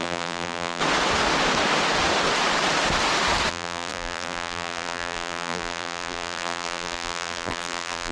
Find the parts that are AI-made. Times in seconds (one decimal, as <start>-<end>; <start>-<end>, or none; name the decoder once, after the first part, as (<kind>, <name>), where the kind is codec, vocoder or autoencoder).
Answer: 0.0-0.8 (vocoder, BigVGAN v2); 3.5-8.1

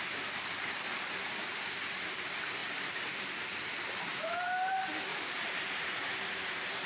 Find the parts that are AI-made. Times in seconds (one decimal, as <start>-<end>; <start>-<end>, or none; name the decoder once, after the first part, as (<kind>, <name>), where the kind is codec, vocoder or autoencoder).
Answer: 2.6-4.3 (vocoder, BigVGAN v2); 5.1-6.9

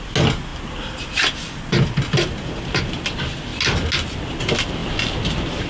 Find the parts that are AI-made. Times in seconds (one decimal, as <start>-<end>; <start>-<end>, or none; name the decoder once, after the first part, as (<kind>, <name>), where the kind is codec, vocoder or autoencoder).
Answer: none